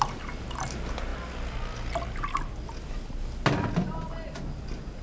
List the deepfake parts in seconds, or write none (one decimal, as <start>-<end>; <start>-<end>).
none